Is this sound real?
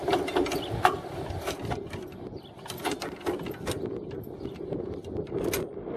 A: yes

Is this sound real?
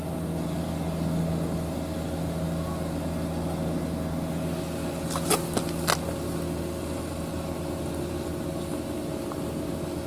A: yes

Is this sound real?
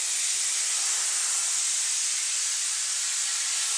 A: yes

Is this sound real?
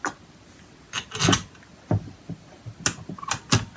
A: yes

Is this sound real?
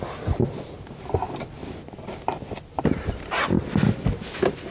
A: yes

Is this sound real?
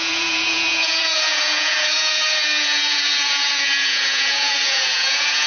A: no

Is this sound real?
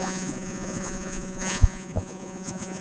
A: no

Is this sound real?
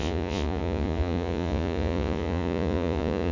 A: no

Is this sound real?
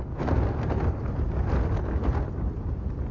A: yes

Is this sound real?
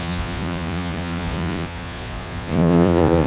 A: no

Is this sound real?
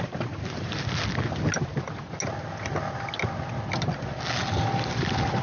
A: yes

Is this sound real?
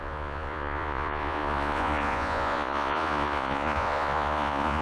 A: no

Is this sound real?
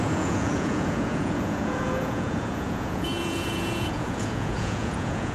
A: no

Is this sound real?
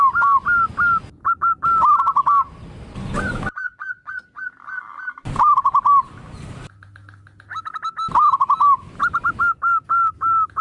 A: yes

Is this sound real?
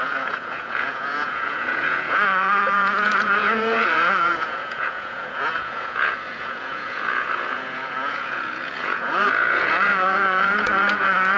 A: no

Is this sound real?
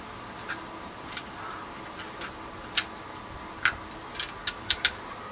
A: yes